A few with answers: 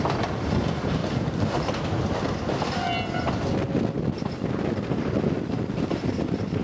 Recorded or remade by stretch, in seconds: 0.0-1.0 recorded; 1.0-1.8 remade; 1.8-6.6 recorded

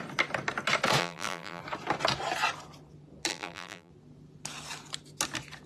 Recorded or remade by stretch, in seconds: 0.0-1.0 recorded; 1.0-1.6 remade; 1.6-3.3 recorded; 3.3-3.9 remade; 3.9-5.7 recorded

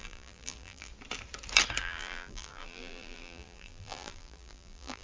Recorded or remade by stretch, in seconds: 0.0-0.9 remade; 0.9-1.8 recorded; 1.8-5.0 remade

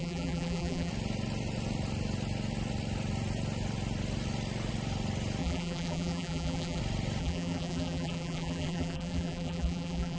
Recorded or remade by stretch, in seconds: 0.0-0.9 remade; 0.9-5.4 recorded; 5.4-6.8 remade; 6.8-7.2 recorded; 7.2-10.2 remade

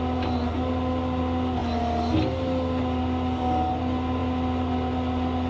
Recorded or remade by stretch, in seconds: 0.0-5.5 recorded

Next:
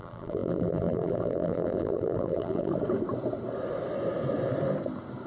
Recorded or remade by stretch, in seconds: 0.0-2.7 remade; 2.7-5.3 recorded

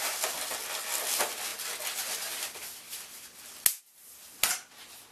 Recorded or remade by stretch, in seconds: 0.0-0.5 remade; 0.5-5.1 recorded